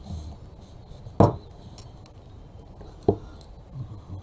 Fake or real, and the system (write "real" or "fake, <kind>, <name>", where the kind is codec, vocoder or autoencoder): real